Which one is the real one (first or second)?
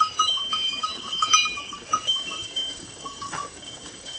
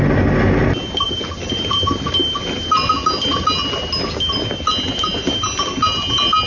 second